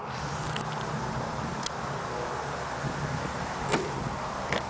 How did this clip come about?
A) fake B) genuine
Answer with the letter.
B